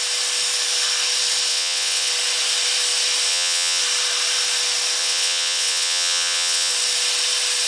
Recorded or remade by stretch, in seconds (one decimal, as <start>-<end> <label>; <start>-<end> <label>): 0.0-1.5 recorded; 1.5-2.1 remade; 2.1-3.3 recorded; 3.3-3.8 remade; 3.8-5.0 recorded; 5.0-6.7 remade; 6.7-7.7 recorded